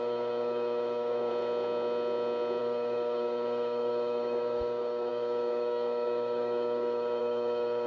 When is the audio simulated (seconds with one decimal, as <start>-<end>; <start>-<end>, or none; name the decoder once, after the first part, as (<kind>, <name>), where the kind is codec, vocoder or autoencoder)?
0.0-1.3 (codec, DAC); 2.6-7.9